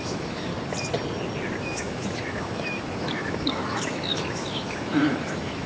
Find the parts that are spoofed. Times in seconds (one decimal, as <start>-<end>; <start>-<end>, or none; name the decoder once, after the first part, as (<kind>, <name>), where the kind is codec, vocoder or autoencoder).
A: 0.0-0.5 (autoencoder, DAC-VAE); 1.6-5.7